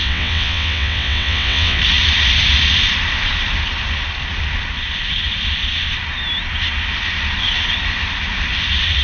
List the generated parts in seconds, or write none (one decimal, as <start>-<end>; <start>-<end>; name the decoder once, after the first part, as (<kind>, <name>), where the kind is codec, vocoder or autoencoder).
0.0-1.8 (vocoder, WaveNeXt)